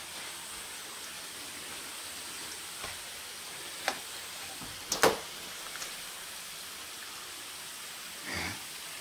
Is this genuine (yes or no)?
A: yes